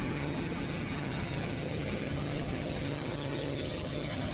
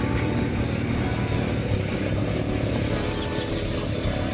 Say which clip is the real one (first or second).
second